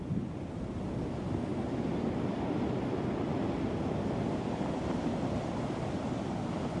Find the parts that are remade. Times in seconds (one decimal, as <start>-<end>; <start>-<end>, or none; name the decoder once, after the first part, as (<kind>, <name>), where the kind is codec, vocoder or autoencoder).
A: none

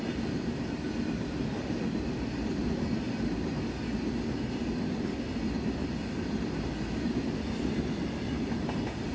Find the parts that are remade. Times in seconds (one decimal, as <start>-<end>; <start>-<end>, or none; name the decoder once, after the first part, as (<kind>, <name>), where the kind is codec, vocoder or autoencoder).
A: none

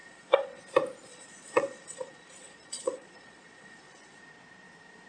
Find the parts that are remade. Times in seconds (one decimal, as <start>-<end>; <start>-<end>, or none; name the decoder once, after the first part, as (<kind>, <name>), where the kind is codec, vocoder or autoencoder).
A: 0.0-0.6 (vocoder, Vocos); 1.1-4.2

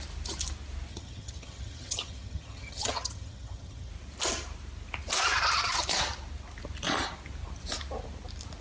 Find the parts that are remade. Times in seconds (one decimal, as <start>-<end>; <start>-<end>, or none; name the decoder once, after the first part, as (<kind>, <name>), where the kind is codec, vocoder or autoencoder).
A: 0.9-3.9 (vocoder, HiFi-GAN)